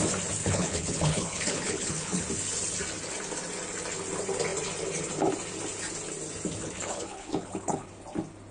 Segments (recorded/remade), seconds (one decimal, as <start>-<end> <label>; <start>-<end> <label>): 0.0-0.4 recorded; 0.4-2.2 remade; 2.2-6.6 recorded; 6.6-7.9 remade; 7.9-8.5 recorded